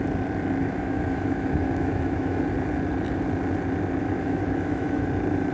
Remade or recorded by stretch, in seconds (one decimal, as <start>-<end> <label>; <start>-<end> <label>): 0.0-0.6 recorded; 0.6-2.4 remade; 2.4-4.0 recorded; 4.0-5.1 remade; 5.1-5.5 recorded